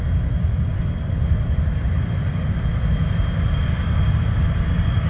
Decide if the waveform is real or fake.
real